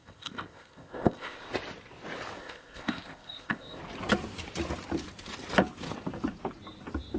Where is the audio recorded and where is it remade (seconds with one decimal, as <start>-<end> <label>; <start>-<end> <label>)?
0.0-1.5 remade; 1.5-2.4 recorded; 2.4-3.8 remade; 3.8-7.2 recorded